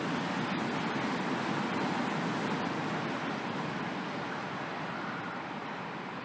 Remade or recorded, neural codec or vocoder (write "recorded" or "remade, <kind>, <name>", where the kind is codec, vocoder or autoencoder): recorded